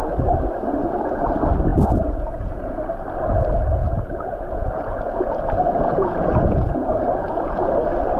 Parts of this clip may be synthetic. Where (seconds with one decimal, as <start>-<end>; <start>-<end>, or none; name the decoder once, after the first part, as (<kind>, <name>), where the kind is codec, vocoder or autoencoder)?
1.7-2.8 (vocoder, Vocos); 3.8-7.6